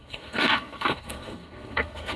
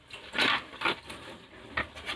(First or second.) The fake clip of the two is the first